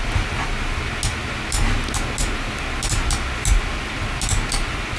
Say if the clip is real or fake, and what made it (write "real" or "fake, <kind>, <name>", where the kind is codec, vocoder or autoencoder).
real